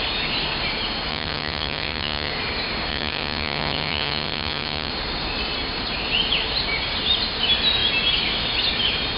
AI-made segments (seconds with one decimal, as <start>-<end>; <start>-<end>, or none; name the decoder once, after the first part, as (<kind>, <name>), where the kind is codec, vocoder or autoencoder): 1.1-2.3 (vocoder, HiFi-GAN); 2.9-4.9